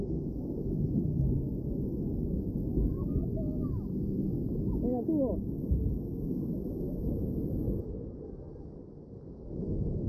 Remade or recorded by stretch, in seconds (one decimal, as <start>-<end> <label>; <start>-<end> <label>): 0.0-10.1 recorded